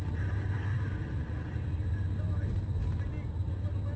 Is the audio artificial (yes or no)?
no